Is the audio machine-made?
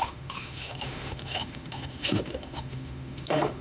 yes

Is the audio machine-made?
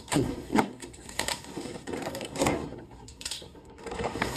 yes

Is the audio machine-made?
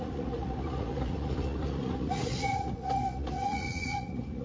yes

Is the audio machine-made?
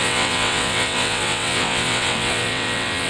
yes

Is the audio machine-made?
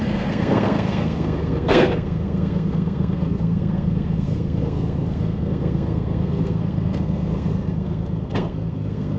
yes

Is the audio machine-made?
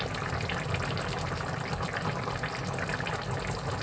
no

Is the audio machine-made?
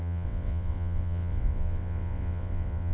yes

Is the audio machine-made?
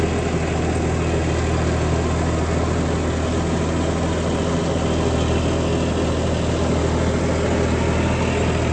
no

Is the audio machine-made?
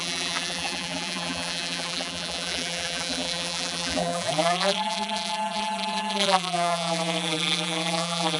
yes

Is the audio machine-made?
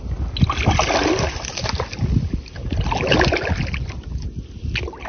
no